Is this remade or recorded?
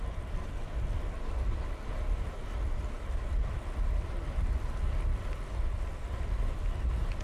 recorded